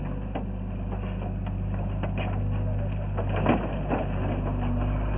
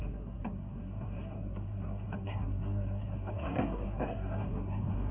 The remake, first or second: second